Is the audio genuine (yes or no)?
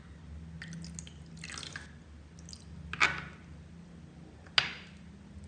yes